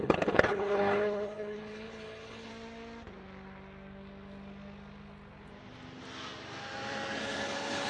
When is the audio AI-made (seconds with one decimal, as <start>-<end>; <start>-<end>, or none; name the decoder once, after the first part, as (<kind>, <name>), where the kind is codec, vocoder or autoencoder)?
0.0-2.5 (codec, HILCodec); 7.2-7.9

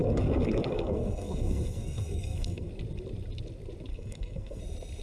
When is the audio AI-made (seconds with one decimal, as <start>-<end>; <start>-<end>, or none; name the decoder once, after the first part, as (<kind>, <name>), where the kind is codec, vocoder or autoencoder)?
0.0-2.7 (codec, SNAC); 3.9-4.6

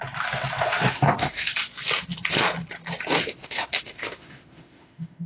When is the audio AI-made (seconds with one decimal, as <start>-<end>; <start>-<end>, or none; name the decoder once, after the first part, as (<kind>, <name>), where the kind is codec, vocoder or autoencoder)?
0.9-1.5 (autoencoder, DAC-VAE); 3.2-5.3